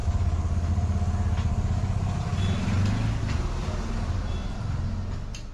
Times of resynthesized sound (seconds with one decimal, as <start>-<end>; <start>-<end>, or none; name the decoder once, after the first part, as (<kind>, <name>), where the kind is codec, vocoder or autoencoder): none